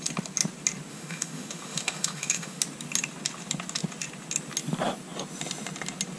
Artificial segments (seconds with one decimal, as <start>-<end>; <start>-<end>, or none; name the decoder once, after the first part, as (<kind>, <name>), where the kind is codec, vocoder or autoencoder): 0.9-2.6 (autoencoder, DAC-VAE)